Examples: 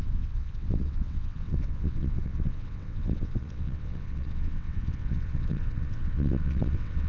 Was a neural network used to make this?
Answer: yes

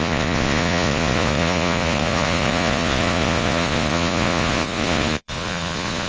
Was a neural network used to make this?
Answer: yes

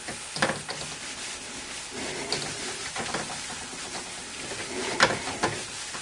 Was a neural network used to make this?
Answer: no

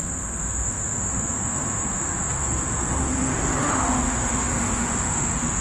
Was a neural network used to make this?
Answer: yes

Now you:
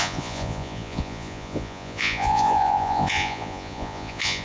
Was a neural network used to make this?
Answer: yes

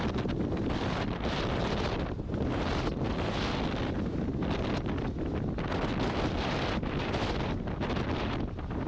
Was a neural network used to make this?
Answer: no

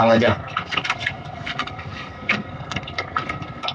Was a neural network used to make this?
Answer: yes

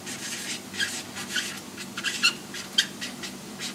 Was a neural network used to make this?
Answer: no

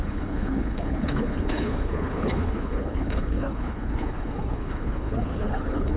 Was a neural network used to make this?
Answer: yes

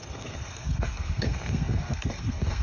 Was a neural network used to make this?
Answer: yes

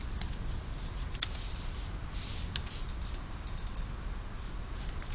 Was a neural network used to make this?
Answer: no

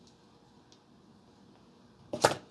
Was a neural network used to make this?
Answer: no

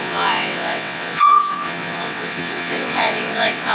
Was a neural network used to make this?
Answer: yes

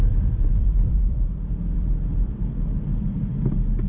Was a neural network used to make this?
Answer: yes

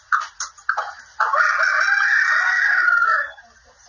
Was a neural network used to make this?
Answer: no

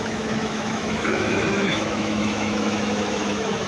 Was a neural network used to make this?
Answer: yes